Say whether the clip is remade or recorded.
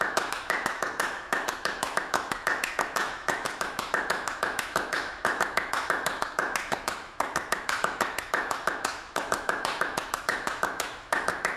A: remade